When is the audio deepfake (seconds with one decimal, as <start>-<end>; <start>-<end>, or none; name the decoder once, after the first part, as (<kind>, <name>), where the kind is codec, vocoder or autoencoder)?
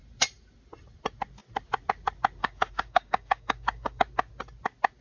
2.4-4.0 (codec, DAC)